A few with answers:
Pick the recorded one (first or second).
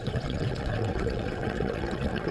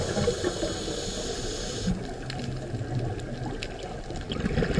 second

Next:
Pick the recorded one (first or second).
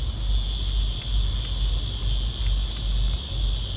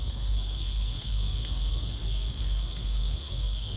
first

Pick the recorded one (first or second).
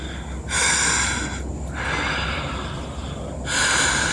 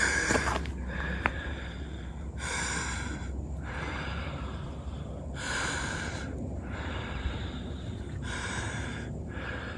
first